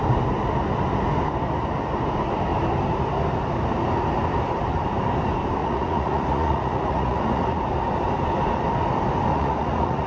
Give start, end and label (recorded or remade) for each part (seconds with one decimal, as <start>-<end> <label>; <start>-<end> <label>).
0.0-5.6 recorded; 5.6-7.6 remade; 7.6-9.3 recorded; 9.3-10.1 remade